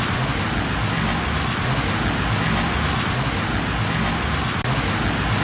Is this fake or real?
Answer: real